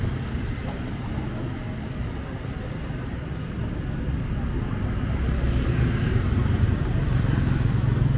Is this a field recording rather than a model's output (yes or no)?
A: yes